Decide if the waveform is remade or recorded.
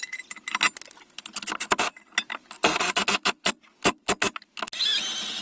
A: recorded